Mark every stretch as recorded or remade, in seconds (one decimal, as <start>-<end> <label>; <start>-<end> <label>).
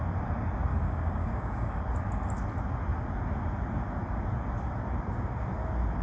0.0-0.7 recorded; 0.7-1.8 remade; 1.8-6.0 recorded